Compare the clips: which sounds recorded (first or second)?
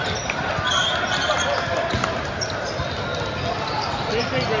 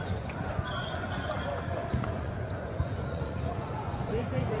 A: first